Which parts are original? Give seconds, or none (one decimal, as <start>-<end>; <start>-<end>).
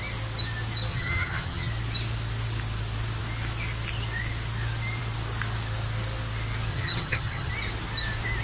0.0-0.9; 1.7-6.7; 7.5-8.4